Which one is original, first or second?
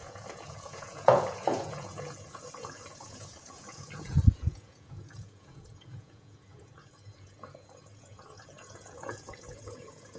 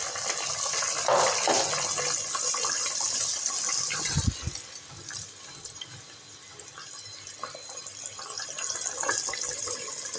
second